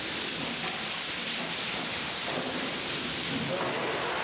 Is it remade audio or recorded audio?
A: recorded